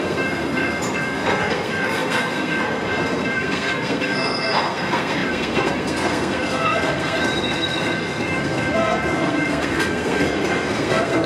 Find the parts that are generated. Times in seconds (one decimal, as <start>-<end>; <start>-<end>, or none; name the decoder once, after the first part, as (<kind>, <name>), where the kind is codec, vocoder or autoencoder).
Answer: 0.0-11.3 (codec, SNAC)